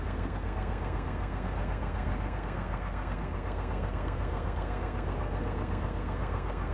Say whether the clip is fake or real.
fake